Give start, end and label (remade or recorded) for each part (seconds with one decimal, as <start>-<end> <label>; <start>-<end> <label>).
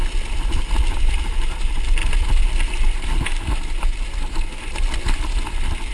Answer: 0.0-5.9 recorded